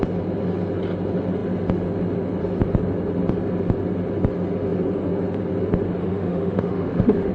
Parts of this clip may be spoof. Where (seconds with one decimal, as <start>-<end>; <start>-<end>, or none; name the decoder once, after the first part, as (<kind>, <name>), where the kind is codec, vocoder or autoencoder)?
6.0-7.3 (autoencoder, DAC-VAE)